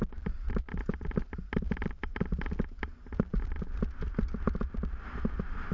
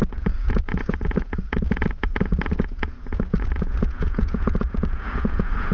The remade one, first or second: second